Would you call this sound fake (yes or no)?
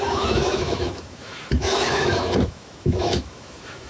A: yes